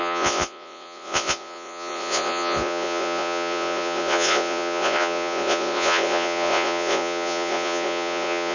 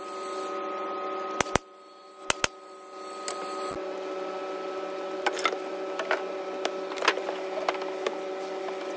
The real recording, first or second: second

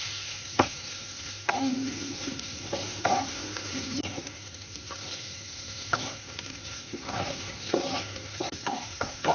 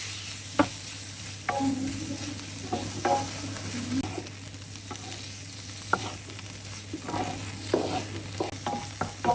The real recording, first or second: second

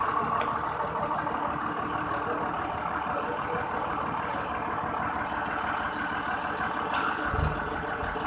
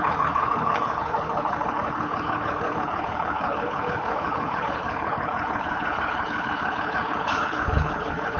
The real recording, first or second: first